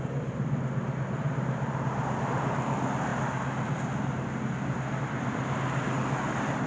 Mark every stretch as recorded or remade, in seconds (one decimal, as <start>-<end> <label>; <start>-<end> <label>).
0.0-6.7 recorded